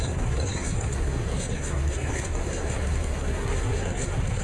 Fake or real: fake